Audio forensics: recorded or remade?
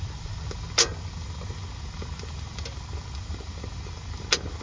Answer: recorded